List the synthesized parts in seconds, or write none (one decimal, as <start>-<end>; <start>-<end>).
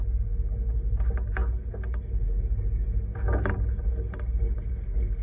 none